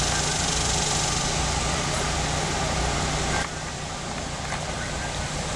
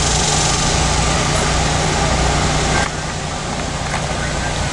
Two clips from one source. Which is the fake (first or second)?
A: first